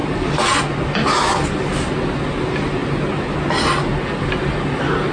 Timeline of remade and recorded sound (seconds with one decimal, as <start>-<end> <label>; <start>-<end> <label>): 0.0-5.1 recorded